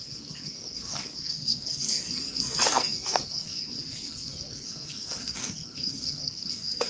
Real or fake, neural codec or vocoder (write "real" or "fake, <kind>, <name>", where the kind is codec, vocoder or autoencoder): fake, codec, SNAC